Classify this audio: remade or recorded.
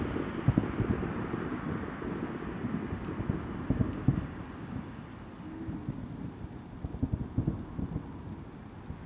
recorded